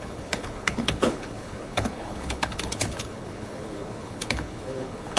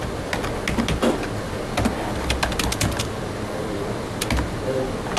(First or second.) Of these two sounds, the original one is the second